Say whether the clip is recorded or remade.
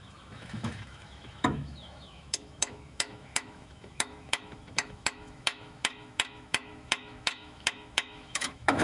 remade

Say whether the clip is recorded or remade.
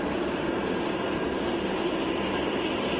recorded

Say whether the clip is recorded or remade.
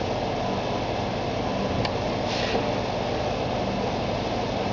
recorded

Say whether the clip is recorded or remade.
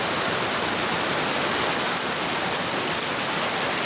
recorded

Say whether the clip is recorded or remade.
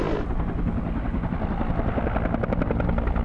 recorded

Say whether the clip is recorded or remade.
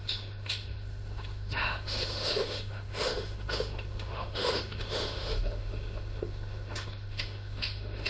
remade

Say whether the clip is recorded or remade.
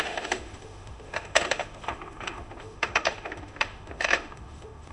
remade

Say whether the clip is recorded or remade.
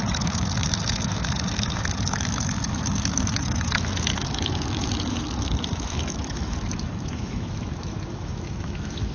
remade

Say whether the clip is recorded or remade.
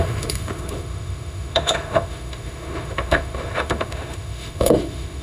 remade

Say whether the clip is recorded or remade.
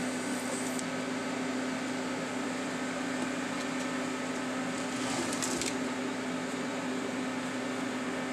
recorded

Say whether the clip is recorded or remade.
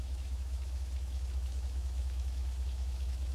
remade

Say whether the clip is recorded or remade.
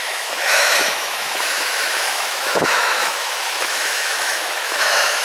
remade